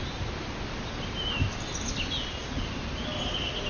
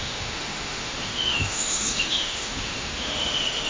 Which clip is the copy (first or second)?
second